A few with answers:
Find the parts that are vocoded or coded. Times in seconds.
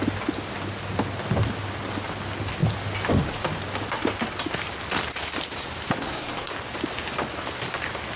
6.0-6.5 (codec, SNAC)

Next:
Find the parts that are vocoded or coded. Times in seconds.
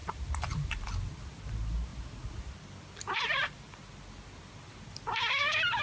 0.0-0.9 (vocoder, BigVGAN v2)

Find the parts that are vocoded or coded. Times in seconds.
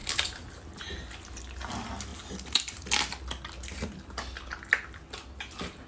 none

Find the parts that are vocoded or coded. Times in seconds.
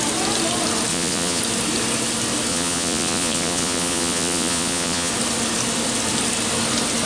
0.9-1.4 (vocoder, Vocos); 2.5-5.1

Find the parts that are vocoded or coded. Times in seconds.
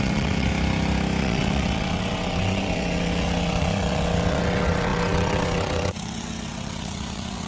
0.0-0.5 (vocoder, WaveNeXt); 1.2-7.5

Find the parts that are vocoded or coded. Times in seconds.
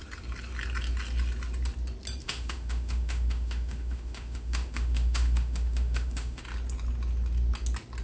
2.2-6.4 (autoencoder, DAC-VAE)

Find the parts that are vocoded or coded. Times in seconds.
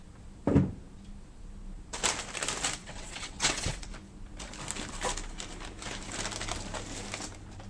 2.8-3.9 (vocoder, WaveNeXt)